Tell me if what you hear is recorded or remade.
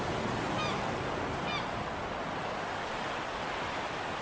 recorded